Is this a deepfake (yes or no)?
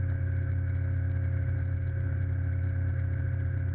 no